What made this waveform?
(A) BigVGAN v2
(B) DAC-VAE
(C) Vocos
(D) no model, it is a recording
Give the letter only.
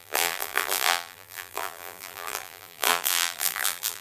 A